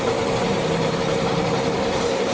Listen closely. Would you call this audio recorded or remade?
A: remade